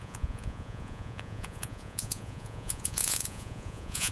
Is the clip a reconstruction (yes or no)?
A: yes